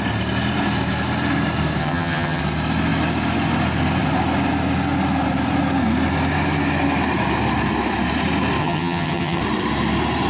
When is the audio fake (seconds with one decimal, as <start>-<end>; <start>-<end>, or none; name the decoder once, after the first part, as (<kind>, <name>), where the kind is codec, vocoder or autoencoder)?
1.8-2.4 (vocoder, HiFi-GAN); 8.6-9.4